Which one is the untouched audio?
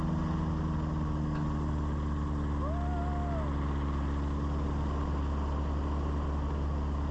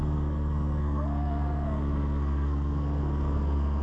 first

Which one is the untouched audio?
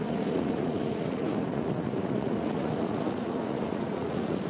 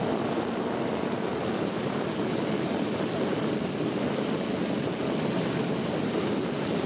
second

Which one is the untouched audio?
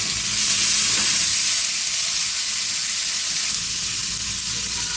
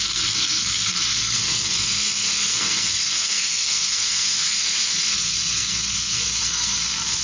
first